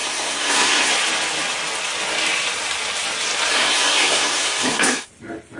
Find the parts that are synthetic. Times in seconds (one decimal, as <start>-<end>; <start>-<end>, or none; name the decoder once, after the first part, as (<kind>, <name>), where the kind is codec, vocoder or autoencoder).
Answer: 0.0-0.9 (codec, SNAC); 3.5-5.1